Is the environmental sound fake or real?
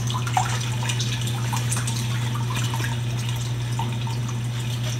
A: real